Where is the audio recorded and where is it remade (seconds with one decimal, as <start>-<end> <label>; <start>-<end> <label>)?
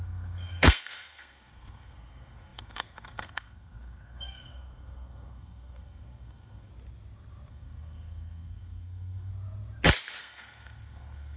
0.0-6.7 remade; 6.7-7.5 recorded; 7.5-9.3 remade; 9.3-10.2 recorded; 10.2-11.4 remade